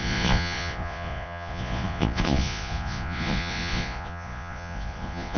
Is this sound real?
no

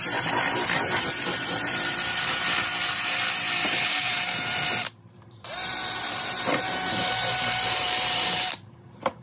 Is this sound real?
no